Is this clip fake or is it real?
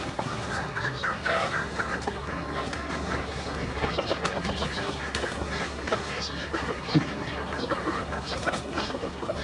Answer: fake